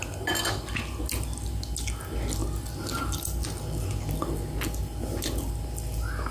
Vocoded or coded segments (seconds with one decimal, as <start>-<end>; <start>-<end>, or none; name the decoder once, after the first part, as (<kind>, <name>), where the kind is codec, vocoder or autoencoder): none